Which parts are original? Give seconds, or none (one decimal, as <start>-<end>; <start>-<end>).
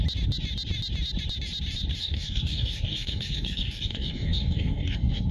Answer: 0.0-2.0